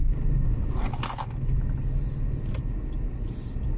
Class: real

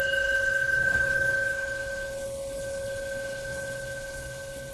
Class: fake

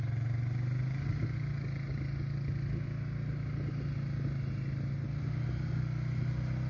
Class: real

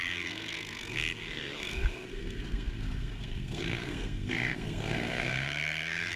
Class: fake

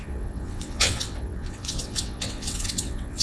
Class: fake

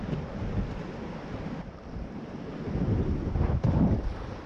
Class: real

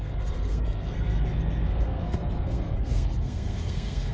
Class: fake